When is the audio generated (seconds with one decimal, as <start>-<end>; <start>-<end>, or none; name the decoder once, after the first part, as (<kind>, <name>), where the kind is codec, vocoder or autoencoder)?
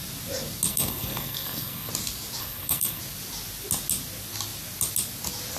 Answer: 0.7-1.9 (codec, SNAC); 2.4-3.0